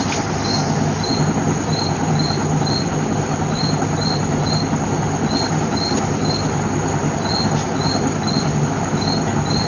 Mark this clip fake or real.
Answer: real